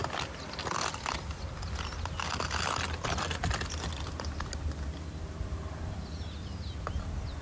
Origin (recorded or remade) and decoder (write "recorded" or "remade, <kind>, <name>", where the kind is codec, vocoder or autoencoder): recorded